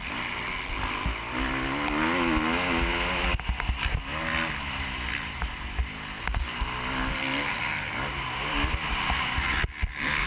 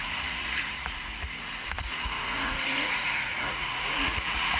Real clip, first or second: first